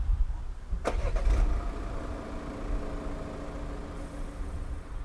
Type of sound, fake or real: real